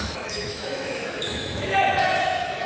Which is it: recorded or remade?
remade